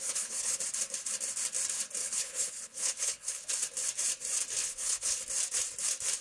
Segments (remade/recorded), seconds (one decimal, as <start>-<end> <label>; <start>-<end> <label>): 0.0-0.6 remade; 0.6-2.0 recorded; 2.0-3.5 remade; 3.5-4.6 recorded; 4.6-5.2 remade; 5.2-6.2 recorded